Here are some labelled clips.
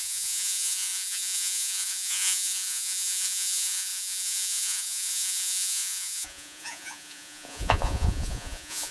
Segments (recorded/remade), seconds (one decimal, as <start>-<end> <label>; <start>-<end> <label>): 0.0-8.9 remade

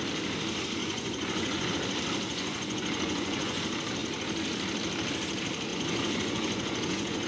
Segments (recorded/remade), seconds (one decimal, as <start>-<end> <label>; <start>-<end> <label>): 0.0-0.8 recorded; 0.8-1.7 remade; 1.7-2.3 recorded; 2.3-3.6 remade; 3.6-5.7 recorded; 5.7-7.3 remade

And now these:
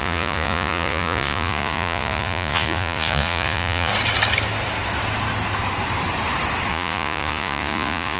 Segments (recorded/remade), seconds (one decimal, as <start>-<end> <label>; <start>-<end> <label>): 0.0-3.9 remade; 3.9-6.7 recorded; 6.7-8.2 remade

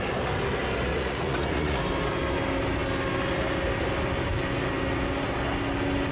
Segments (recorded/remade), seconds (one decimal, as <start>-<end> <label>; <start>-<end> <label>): 0.0-0.9 recorded; 0.9-1.8 remade; 1.8-6.1 recorded